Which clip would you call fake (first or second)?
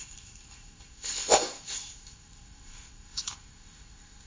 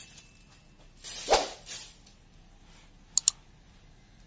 first